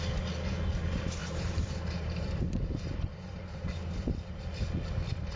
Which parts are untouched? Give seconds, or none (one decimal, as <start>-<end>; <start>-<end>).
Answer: 0.0-1.2; 4.4-5.4